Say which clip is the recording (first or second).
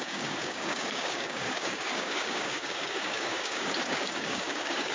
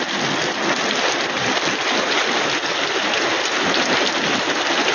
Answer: second